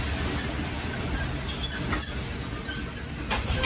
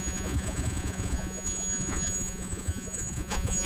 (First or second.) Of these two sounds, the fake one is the second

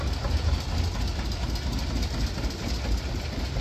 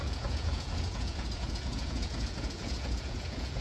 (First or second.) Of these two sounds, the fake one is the second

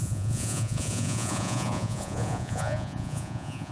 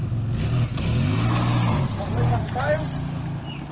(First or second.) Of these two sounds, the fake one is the first